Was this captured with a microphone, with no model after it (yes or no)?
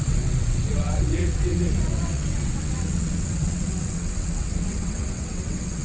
no